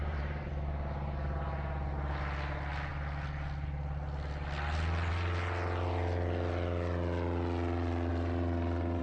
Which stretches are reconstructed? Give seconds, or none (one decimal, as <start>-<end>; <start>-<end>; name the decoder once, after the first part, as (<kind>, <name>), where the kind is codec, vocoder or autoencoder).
0.0-0.5 (vocoder, BigVGAN v2); 8.1-9.0